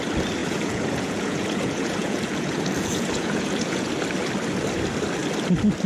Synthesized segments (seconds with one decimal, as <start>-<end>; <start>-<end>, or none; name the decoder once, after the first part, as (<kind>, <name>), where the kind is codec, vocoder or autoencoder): 0.4-3.9 (vocoder, Vocos)